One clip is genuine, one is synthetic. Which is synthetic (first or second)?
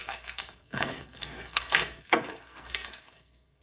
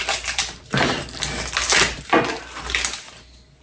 first